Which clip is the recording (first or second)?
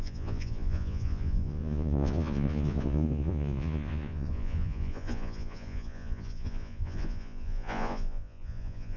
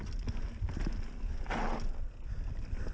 second